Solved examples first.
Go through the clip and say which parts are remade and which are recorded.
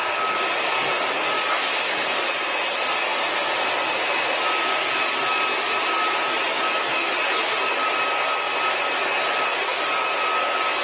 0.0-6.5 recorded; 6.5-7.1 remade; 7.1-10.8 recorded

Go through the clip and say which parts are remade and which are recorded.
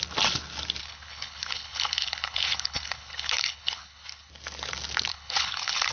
0.0-0.8 recorded; 0.8-4.3 remade; 4.3-5.1 recorded; 5.1-5.9 remade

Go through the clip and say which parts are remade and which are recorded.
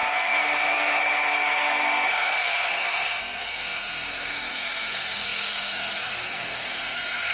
0.0-7.3 remade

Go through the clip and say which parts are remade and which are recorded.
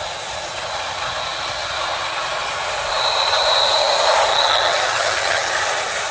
0.0-4.3 recorded; 4.3-5.5 remade; 5.5-6.1 recorded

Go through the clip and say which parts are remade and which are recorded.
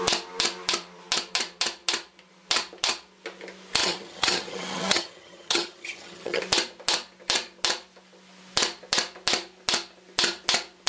0.0-3.8 recorded; 3.8-6.4 remade; 6.4-10.9 recorded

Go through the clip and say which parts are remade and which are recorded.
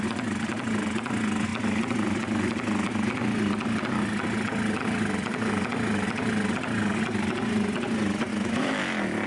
0.0-8.3 recorded; 8.3-8.8 remade; 8.8-9.3 recorded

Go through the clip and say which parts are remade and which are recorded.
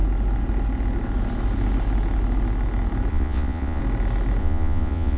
0.0-3.1 recorded; 3.1-3.8 remade; 3.8-4.4 recorded; 4.4-5.2 remade